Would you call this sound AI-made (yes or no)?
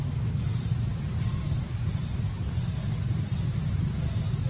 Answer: no